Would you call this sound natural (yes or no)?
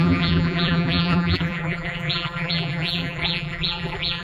no